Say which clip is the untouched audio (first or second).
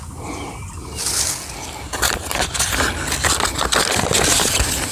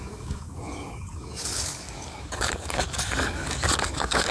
first